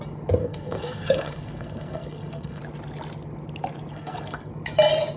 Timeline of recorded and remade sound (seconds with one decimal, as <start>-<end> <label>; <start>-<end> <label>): 0.0-0.4 recorded; 0.4-2.6 remade; 2.6-3.9 recorded; 3.9-4.5 remade; 4.5-5.2 recorded